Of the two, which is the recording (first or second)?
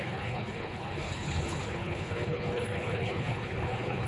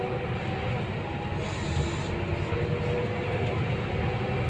second